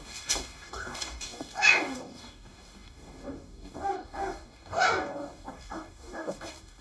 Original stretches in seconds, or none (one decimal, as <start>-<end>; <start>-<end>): none